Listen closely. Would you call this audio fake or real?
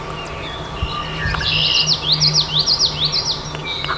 real